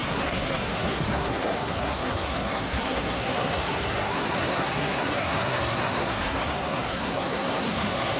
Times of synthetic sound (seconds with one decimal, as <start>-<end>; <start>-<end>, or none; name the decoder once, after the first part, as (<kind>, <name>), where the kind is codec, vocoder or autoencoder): 0.0-8.2 (codec, SNAC)